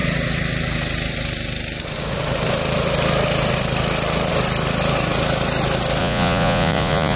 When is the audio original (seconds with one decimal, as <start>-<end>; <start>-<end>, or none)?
0.0-6.0